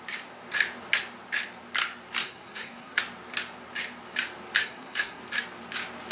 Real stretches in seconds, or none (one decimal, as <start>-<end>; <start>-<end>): 0.0-2.2; 3.0-4.6; 5.2-6.1